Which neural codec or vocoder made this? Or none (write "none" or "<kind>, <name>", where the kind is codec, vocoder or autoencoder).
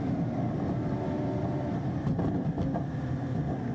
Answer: none